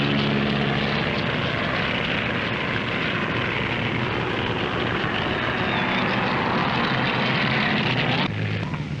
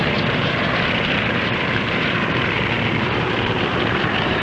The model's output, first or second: second